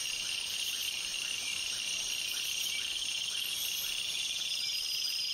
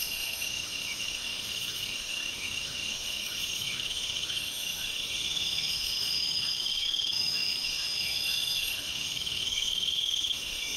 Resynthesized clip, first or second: second